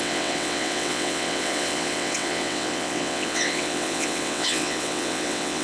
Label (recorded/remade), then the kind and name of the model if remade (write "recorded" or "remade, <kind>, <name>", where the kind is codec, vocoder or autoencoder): remade, vocoder, WaveNeXt